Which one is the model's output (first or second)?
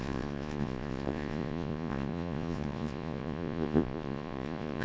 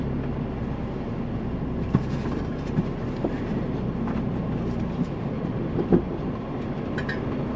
first